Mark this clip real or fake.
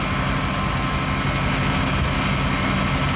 real